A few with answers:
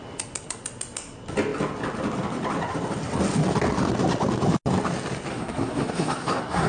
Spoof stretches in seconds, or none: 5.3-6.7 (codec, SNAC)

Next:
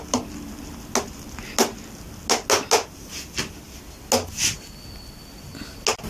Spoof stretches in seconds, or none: none